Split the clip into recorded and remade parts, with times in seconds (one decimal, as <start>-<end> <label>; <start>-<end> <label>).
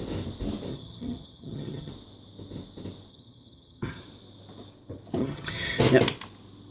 0.0-0.7 recorded; 0.7-1.9 remade; 1.9-3.1 recorded; 3.1-4.0 remade; 4.0-5.2 recorded; 5.2-5.8 remade; 5.8-6.7 recorded